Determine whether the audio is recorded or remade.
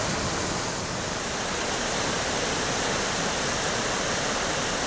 recorded